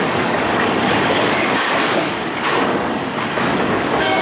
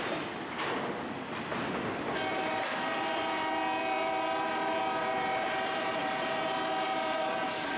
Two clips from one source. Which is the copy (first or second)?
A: first